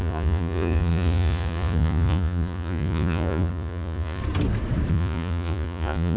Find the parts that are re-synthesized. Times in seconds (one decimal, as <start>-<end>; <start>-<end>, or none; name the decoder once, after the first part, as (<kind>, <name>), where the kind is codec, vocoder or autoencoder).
0.0-4.2 (vocoder, Vocos); 4.9-6.2